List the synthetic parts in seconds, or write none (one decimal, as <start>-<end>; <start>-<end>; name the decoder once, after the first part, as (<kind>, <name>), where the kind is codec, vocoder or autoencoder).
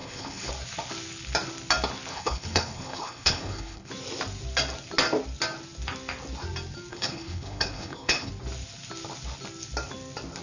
0.0-0.5 (codec, HILCodec); 2.1-3.9; 6.9-8.3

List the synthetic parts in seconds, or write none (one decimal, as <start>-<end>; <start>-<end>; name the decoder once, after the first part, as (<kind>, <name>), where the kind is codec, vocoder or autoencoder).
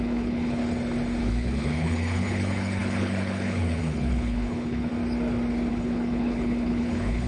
0.0-0.6 (codec, HILCodec); 1.2-4.9; 5.7-7.3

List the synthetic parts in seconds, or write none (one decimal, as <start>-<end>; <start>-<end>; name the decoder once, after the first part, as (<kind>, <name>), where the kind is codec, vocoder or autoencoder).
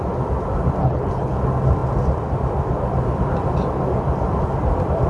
0.8-1.4 (codec, HILCodec)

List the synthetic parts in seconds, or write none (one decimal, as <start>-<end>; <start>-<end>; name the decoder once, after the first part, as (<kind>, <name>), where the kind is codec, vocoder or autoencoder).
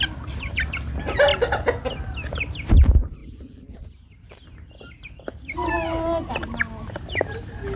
none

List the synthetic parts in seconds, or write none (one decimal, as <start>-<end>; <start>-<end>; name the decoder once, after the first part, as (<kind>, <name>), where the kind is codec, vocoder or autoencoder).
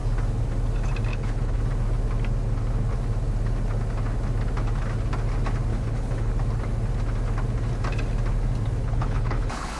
1.1-1.6 (codec, HILCodec); 5.7-6.3; 8.8-9.8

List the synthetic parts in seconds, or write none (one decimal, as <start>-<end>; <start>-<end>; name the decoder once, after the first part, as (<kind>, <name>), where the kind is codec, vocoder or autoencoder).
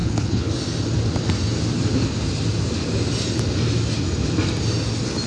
0.0-0.5 (codec, HILCodec)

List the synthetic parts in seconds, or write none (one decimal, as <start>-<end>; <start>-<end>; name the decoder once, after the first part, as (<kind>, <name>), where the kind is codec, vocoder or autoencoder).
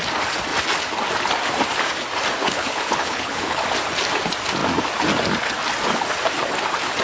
2.4-3.6 (codec, HILCodec)